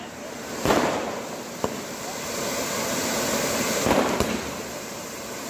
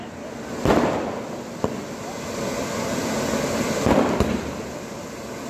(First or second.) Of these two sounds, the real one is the second